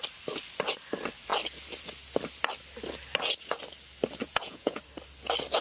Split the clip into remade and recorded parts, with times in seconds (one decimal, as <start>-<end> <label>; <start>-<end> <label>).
0.0-4.2 recorded; 4.2-4.8 remade; 4.8-5.6 recorded